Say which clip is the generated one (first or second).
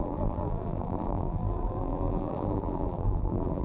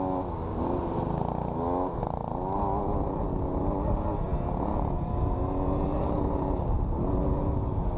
first